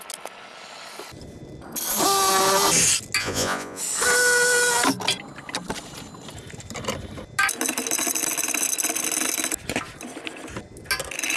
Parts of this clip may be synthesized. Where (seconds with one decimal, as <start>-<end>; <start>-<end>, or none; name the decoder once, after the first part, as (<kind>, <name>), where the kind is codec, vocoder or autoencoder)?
3.2-3.8 (vocoder, Vocos)